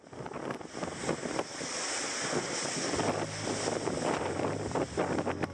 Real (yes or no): yes